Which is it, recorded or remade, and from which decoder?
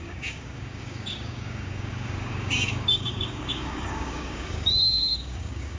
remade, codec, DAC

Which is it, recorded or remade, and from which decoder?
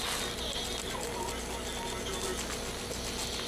recorded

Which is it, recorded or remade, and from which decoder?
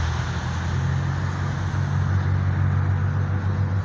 recorded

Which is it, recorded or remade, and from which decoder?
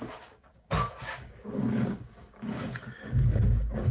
remade, codec, DAC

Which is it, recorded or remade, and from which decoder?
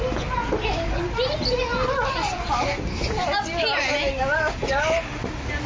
recorded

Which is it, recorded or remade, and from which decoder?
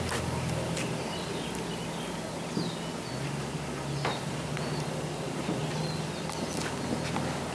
recorded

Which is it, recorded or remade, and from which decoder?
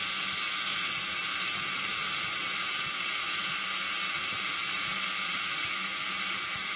recorded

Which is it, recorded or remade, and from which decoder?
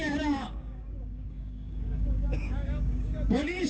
remade, codec, DAC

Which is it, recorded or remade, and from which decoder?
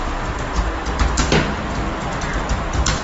recorded